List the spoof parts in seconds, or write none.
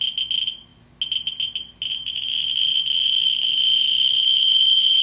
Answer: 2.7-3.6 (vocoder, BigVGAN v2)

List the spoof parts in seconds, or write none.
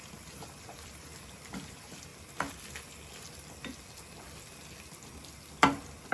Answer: 0.0-1.1 (vocoder, BigVGAN v2); 1.7-2.1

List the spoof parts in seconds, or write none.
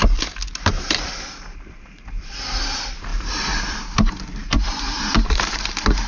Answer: 0.0-6.1 (vocoder, BigVGAN v2)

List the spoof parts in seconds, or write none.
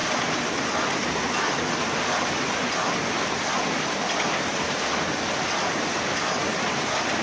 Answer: none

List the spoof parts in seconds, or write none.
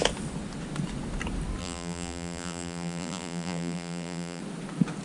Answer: 1.6-4.4 (vocoder, BigVGAN v2)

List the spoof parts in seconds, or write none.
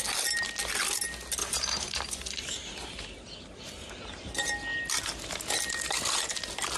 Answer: 1.4-3.9 (vocoder, BigVGAN v2)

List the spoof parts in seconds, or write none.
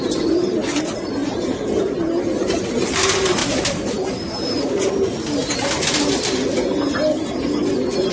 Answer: 3.4-4.6 (vocoder, BigVGAN v2)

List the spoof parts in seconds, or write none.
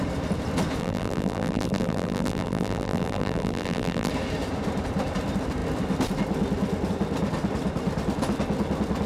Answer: 0.8-4.1 (vocoder, BigVGAN v2)